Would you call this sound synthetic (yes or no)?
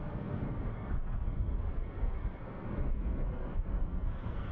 yes